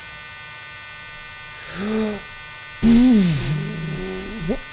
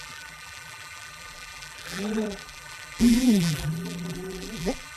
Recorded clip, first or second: first